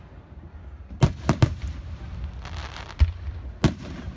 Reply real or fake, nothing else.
real